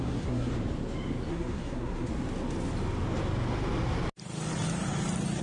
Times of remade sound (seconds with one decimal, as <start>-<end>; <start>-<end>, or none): 0.0-0.5; 1.3-2.1